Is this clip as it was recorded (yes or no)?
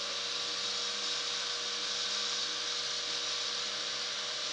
yes